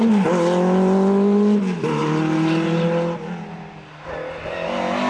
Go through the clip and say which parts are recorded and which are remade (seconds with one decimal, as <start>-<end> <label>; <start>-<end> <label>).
0.0-5.1 recorded